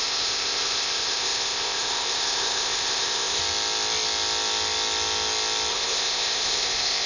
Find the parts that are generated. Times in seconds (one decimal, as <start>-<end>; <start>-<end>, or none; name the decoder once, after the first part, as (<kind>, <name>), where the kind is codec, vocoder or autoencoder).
0.0-3.4 (codec, ZipCodec); 5.7-7.1